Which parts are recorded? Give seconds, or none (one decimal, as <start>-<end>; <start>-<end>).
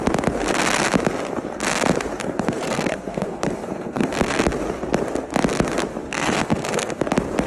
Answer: 0.0-2.2; 4.1-6.1; 7.0-7.5